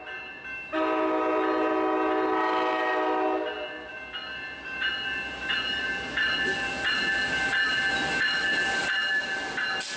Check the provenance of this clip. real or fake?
real